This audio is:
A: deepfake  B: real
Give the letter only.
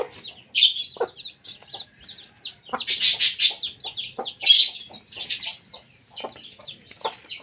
B